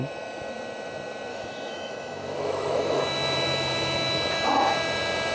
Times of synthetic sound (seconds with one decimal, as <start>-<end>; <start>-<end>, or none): 1.3-3.0